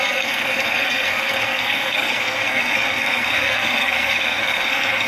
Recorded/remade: remade